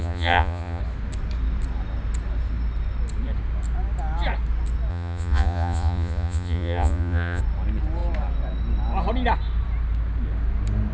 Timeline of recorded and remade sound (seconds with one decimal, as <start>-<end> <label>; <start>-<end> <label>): 0.0-0.8 remade; 0.8-4.9 recorded; 4.9-7.4 remade; 7.4-10.9 recorded